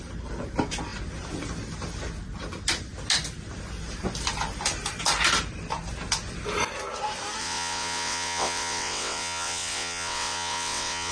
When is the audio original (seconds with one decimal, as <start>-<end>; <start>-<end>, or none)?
0.0-7.4